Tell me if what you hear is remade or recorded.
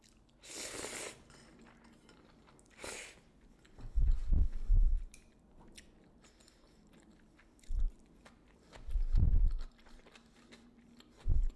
recorded